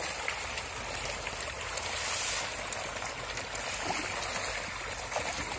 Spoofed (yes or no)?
no